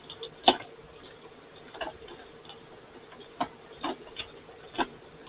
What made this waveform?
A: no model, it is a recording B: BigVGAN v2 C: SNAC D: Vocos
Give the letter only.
A